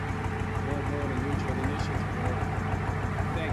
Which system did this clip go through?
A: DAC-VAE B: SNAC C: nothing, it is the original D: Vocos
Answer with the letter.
C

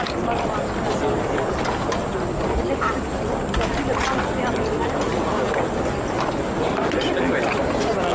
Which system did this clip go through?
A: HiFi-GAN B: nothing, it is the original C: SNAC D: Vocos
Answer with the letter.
B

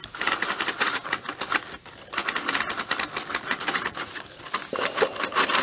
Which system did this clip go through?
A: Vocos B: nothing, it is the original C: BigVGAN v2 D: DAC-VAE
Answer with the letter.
B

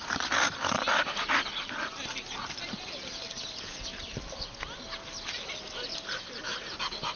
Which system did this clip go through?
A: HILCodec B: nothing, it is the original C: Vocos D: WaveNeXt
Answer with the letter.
B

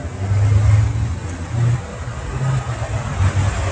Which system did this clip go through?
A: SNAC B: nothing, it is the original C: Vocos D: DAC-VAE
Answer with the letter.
B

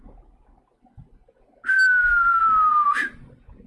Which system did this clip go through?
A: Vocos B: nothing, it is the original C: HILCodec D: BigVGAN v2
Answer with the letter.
B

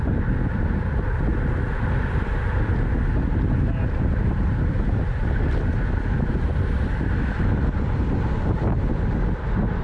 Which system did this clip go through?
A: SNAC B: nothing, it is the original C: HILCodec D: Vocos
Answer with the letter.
B